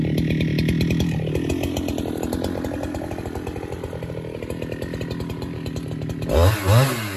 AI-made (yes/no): no